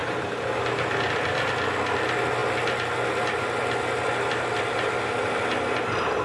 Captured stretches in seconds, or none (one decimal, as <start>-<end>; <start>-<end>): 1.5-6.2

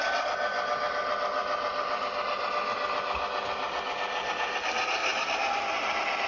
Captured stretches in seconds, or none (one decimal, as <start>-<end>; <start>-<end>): 0.0-5.0; 5.8-6.3

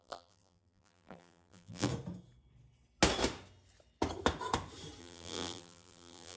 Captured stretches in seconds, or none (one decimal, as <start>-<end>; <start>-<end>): 1.9-5.0

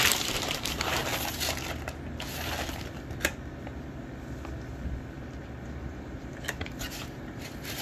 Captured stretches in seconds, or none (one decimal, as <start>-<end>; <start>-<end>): 1.0-5.4

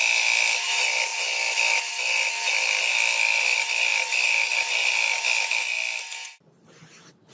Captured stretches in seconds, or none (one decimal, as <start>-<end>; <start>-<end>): 0.0-7.3

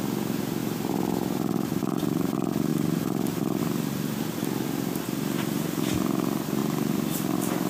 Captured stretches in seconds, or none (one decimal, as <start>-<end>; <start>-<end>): 0.0-7.7